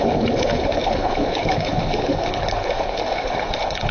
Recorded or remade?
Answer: remade